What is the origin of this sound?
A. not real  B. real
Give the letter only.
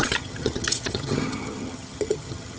A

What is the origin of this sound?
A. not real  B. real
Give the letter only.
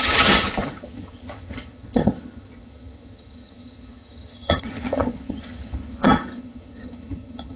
A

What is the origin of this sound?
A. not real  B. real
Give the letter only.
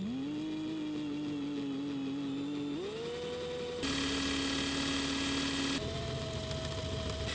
B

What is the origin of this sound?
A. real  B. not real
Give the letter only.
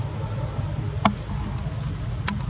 A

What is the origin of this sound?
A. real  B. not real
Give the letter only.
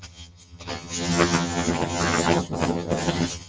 B